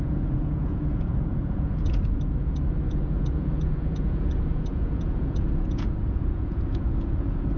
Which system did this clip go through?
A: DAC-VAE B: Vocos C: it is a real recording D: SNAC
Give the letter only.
B